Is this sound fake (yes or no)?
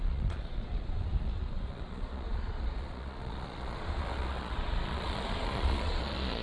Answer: yes